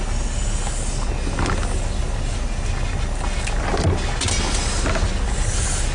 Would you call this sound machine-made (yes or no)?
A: no